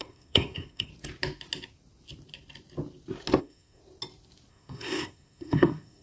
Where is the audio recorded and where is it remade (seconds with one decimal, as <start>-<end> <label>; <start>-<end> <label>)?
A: 0.0-0.9 remade; 0.9-3.4 recorded; 3.4-3.8 remade; 3.8-4.5 recorded; 4.5-6.0 remade